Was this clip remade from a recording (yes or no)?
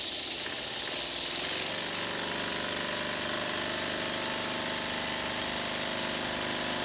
no